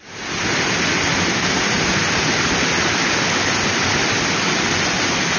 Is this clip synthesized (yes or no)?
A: no